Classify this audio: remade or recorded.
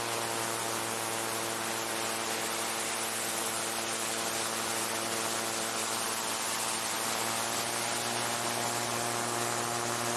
recorded